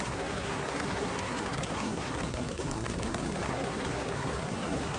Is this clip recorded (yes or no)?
no